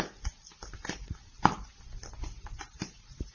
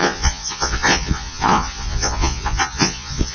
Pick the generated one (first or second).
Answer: second